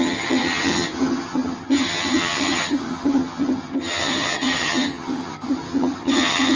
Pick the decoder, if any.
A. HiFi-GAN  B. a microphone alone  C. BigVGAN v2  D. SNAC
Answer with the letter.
A